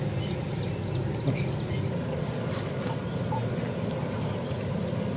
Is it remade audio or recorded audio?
recorded